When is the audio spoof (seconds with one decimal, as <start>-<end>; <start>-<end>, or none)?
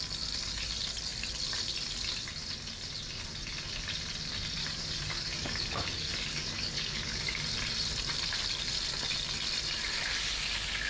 4.6-7.4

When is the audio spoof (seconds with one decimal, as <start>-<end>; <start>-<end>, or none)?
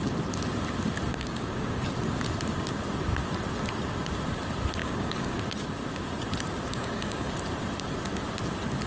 1.1-1.8; 4.8-5.4; 6.7-7.3